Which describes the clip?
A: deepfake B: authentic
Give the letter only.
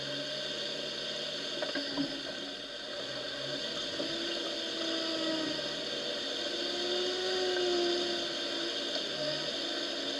B